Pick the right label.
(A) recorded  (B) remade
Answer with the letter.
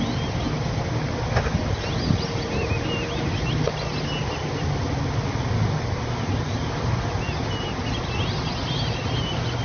A